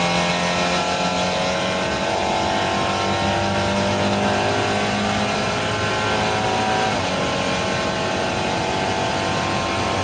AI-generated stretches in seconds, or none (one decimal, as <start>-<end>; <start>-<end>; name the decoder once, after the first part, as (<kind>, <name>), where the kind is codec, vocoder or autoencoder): none

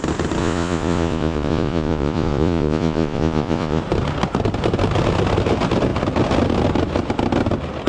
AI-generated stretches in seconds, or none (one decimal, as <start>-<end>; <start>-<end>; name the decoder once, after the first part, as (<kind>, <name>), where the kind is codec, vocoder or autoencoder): 0.4-3.8 (vocoder, Vocos)

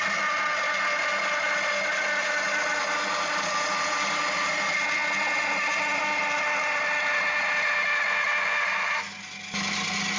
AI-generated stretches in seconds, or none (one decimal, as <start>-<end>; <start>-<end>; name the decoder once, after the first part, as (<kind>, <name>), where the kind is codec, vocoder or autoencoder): none

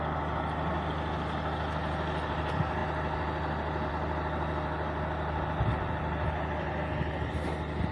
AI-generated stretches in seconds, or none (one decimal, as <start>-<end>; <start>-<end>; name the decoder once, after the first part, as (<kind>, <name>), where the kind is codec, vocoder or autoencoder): none

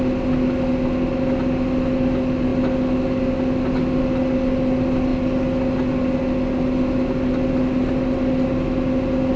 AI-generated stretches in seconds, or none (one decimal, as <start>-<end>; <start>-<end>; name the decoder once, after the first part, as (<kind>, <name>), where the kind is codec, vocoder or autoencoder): none

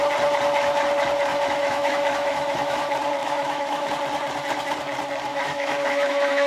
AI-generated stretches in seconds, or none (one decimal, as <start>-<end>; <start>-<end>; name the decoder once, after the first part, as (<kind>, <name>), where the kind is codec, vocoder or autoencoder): 1.3-2.8 (autoencoder, DAC-VAE); 3.2-3.9; 5.3-6.5